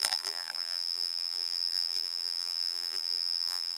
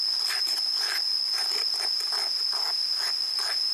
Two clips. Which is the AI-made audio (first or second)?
first